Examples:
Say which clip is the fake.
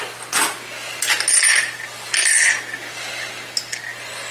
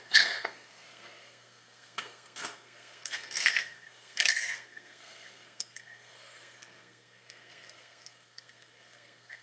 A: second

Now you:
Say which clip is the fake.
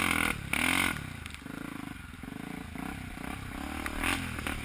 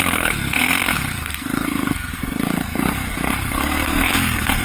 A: second